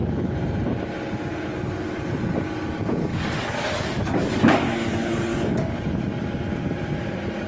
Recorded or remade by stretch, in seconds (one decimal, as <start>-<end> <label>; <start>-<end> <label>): 0.0-3.1 recorded; 3.1-5.9 remade; 5.9-7.5 recorded